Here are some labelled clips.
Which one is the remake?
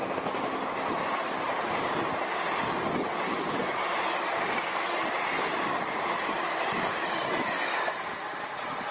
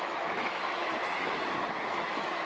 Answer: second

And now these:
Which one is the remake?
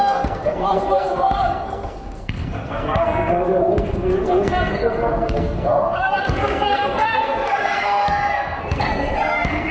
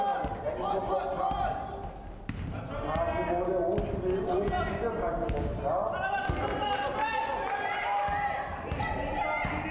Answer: first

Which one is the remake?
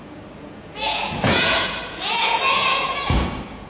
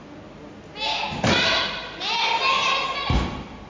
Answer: first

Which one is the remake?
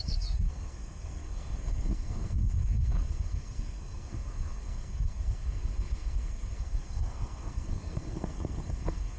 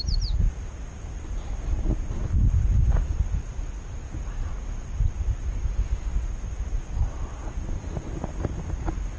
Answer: first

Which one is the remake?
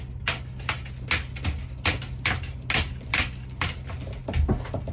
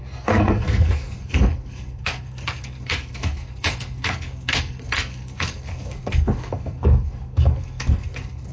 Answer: second